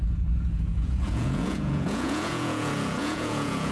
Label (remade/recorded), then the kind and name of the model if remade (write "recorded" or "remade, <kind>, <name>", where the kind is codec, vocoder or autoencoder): remade, vocoder, Vocos